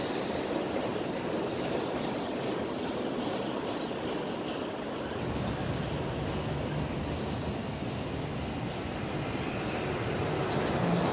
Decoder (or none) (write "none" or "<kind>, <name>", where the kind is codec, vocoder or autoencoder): none